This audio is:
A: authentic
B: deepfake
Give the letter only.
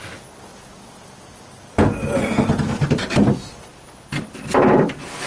A